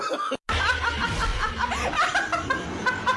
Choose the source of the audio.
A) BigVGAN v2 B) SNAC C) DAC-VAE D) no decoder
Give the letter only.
D